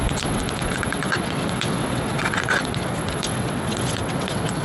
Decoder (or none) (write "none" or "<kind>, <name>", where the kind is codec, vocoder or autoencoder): vocoder, WaveNeXt